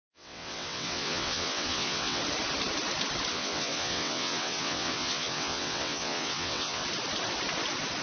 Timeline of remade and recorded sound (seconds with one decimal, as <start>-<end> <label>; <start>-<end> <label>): 0.0-2.2 remade; 2.2-3.3 recorded; 3.3-6.8 remade; 6.8-8.0 recorded

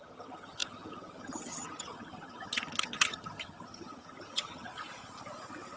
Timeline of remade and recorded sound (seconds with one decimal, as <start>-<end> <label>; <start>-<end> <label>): 0.0-4.7 remade; 4.7-5.8 recorded

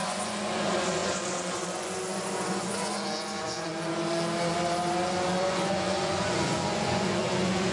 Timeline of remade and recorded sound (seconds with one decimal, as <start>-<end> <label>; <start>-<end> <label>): 0.0-3.7 remade; 3.7-5.4 recorded; 5.4-7.7 remade

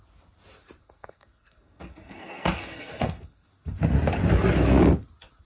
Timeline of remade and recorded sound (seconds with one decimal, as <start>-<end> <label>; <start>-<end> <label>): 0.0-0.8 recorded; 0.8-3.5 remade; 3.5-5.4 recorded

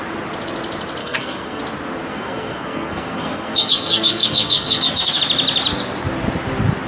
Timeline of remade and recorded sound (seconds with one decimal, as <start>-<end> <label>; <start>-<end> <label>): 0.0-1.0 recorded; 1.0-1.6 remade; 1.6-2.1 recorded; 2.1-5.2 remade; 5.2-6.9 recorded

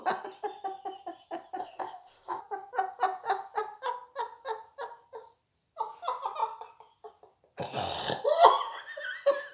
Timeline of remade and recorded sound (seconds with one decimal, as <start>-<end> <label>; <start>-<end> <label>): 0.0-1.6 recorded; 1.6-2.4 remade; 2.4-9.5 recorded

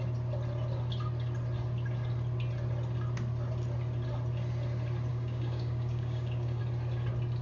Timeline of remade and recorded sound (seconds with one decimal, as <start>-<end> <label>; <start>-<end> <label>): 0.0-5.1 recorded; 5.1-6.6 remade; 6.6-7.4 recorded